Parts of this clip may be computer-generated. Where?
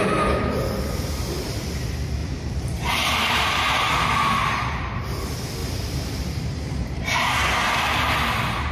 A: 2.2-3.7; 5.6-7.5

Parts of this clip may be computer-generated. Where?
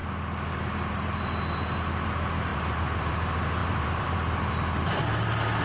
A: 2.5-3.1; 3.6-4.5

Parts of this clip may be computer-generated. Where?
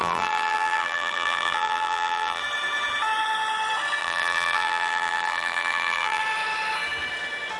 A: 0.0-2.4; 4.0-6.2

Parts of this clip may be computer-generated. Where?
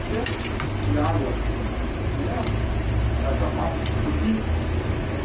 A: 1.6-3.1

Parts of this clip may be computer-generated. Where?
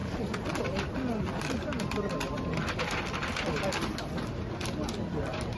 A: none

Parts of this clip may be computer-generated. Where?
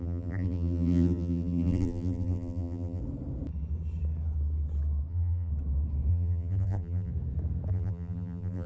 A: 0.0-3.0; 5.1-5.5; 6.1-7.1; 7.7-8.7